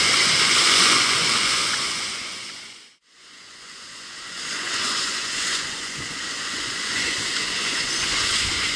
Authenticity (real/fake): fake